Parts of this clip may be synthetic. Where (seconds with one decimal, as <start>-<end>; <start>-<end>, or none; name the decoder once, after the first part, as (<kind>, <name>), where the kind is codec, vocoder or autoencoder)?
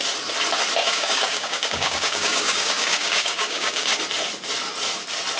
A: 0.8-4.0 (codec, DAC)